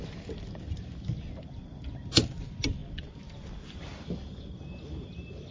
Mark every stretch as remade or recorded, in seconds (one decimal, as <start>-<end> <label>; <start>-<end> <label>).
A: 0.0-5.5 recorded